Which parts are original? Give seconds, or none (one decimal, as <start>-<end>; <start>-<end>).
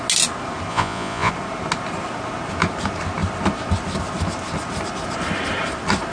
0.0-0.7; 1.3-6.1